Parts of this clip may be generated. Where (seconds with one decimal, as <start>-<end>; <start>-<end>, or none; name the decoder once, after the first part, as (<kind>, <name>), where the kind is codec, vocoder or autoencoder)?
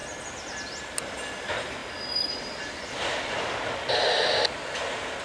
none